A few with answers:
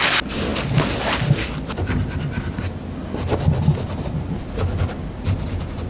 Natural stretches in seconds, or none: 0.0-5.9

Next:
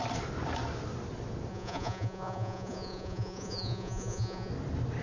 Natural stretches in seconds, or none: 0.0-1.5; 4.5-5.0

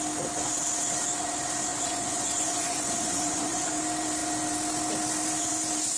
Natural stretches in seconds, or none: 0.0-1.7; 3.8-6.0